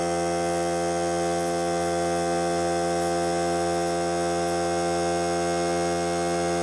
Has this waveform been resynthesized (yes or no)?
no